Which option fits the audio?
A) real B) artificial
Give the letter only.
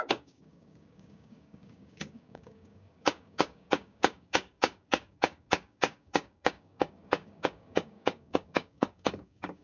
B